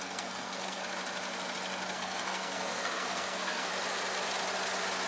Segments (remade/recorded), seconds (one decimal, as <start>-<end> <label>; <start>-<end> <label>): 0.0-0.8 remade; 0.8-1.9 recorded; 1.9-3.7 remade; 3.7-5.1 recorded